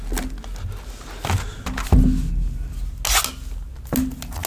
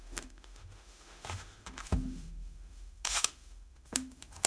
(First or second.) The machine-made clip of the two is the second